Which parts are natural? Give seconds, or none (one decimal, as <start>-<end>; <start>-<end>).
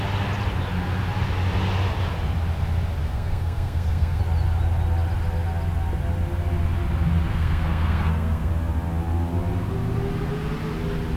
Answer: 0.0-3.0; 4.2-7.3; 8.5-11.2